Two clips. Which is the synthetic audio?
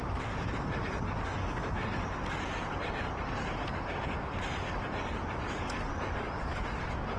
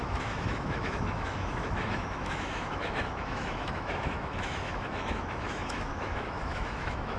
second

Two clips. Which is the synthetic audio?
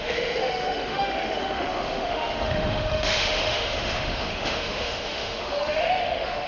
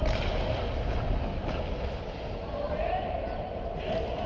first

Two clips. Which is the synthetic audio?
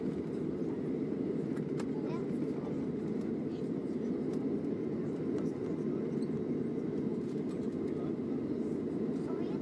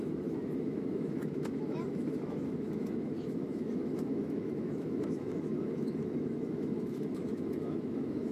second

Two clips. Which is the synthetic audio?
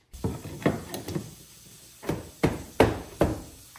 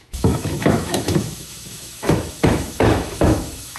second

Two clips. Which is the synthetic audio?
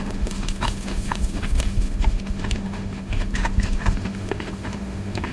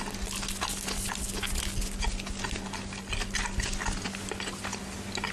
first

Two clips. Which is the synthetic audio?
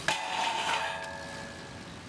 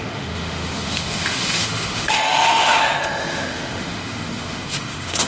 second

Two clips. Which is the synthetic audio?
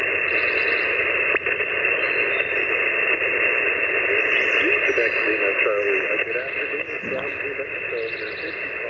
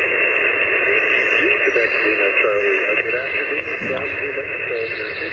second